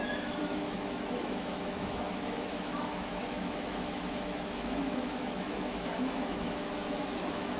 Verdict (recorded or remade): remade